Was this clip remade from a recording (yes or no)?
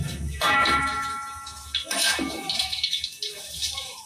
yes